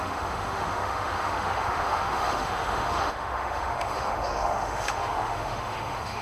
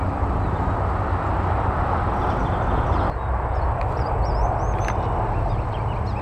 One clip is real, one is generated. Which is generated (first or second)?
first